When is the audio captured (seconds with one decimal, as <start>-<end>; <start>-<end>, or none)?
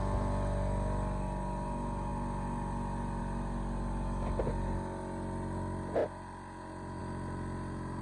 0.0-8.0